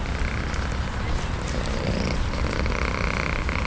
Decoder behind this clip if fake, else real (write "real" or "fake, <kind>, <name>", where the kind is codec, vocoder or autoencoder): real